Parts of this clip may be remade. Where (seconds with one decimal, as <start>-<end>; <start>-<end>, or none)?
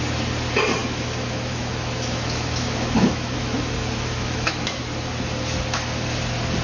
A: 0.8-4.8